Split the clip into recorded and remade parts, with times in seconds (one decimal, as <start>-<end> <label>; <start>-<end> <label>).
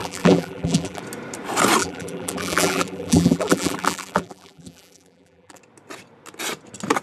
0.0-1.0 remade; 1.0-1.8 recorded; 1.8-5.6 remade; 5.6-7.0 recorded